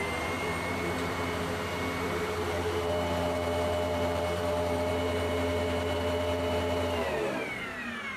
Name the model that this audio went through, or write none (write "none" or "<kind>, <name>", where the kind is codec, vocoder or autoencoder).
vocoder, BigVGAN v2